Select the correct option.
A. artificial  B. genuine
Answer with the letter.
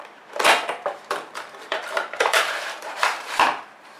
A